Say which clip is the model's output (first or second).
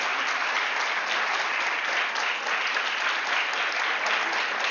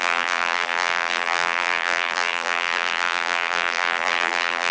second